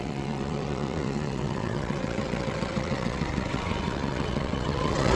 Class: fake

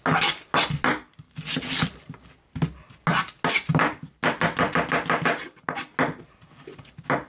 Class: real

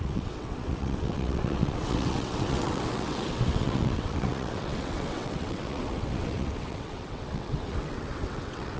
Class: fake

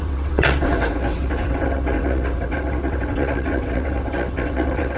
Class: fake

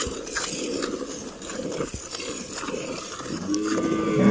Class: real